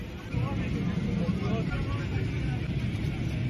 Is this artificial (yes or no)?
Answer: no